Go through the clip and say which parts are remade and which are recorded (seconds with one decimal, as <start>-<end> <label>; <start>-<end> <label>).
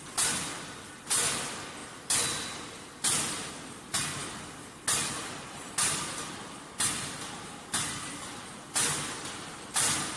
0.0-10.2 recorded